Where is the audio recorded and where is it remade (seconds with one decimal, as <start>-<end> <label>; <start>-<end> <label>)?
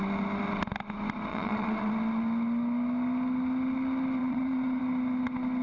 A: 0.0-1.3 recorded; 1.3-1.9 remade; 1.9-4.2 recorded; 4.2-4.8 remade; 4.8-5.6 recorded